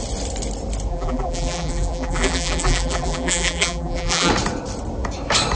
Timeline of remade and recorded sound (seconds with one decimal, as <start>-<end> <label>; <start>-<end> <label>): 0.0-0.9 recorded; 0.9-4.3 remade; 4.3-5.6 recorded